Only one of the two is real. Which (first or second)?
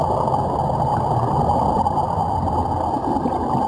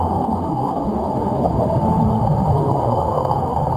first